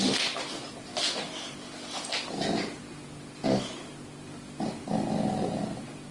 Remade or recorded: recorded